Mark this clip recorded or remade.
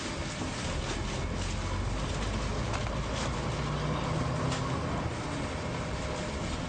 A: recorded